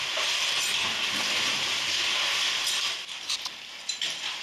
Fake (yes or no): yes